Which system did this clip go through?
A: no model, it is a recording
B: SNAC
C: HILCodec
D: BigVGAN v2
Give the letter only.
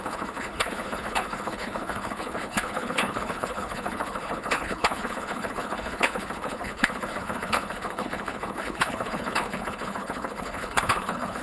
C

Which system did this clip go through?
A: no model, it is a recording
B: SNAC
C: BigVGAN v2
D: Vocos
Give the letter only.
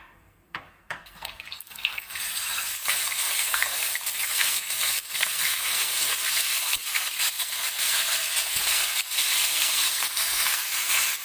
B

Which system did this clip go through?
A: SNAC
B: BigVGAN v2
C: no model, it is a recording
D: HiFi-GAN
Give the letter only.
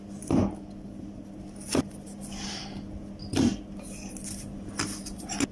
C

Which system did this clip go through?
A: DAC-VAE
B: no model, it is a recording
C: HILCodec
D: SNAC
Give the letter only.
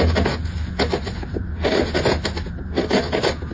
B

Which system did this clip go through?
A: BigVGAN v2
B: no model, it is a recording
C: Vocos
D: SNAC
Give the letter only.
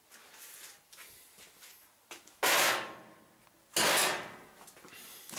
B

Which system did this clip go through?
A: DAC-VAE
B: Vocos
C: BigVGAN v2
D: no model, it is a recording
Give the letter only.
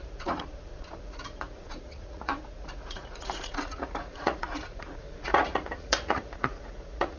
B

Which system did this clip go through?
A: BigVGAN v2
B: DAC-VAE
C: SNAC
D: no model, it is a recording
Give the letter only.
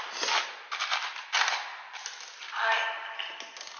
D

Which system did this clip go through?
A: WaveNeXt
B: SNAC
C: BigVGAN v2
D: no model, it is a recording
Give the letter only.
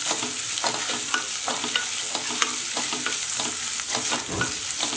D